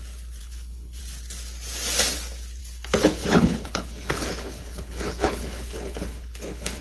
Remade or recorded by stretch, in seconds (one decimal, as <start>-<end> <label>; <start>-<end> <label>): 0.0-0.4 recorded; 0.4-1.0 remade; 1.0-2.6 recorded; 2.6-6.8 remade